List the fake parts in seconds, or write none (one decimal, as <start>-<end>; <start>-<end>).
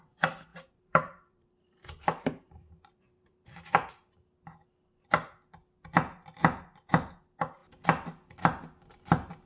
0.5-3.9